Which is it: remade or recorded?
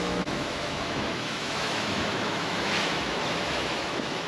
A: remade